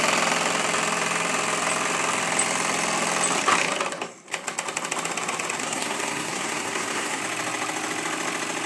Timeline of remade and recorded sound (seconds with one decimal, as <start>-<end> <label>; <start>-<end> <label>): 0.0-5.6 recorded; 5.6-7.2 remade; 7.2-8.7 recorded